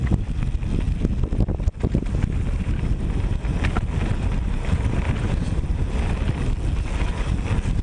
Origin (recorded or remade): recorded